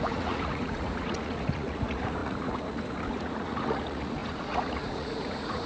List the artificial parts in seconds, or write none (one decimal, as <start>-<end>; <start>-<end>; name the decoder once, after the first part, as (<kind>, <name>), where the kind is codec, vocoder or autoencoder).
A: 0.0-5.7 (vocoder, Vocos)